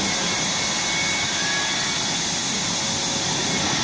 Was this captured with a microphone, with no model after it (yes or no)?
yes